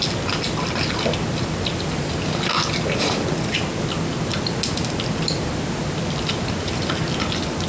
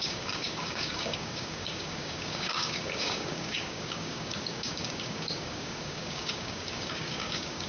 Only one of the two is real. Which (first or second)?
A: first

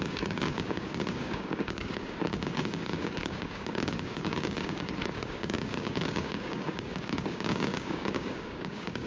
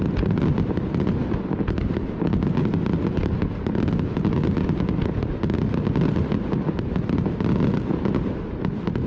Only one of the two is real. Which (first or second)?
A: second